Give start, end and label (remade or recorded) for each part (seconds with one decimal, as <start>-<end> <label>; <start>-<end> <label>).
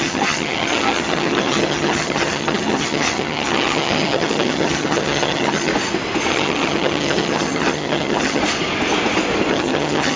0.0-5.7 remade; 5.7-6.3 recorded; 6.3-8.4 remade; 8.4-9.5 recorded; 9.5-10.2 remade